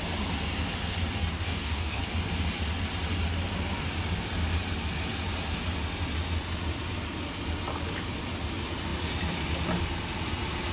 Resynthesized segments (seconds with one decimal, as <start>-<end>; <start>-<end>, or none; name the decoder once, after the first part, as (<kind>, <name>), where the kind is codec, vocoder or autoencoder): 1.2-2.0 (codec, DAC)